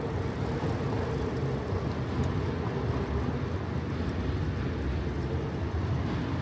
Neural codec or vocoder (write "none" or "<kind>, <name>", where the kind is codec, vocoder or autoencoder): none